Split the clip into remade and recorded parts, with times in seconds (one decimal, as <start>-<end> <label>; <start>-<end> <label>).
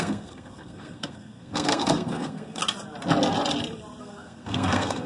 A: 0.0-2.6 remade; 2.6-4.0 recorded; 4.0-5.1 remade